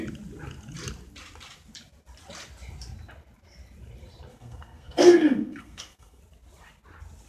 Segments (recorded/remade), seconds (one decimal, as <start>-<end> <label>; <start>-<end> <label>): 0.0-4.3 recorded; 4.3-6.2 remade; 6.2-7.3 recorded